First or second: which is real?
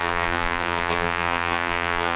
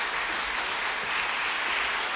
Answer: second